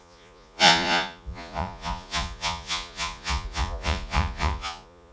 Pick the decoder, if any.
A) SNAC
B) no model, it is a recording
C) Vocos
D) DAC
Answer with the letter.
C